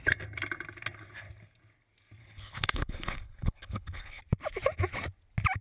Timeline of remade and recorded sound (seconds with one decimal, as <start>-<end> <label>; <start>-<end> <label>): 0.0-2.2 recorded; 2.2-4.2 remade; 4.2-5.6 recorded